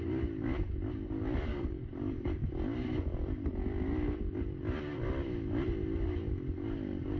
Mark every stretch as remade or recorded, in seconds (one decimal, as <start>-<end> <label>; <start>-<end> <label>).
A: 0.0-1.5 recorded; 1.5-2.5 remade; 2.5-7.2 recorded